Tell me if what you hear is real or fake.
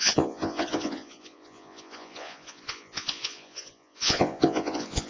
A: fake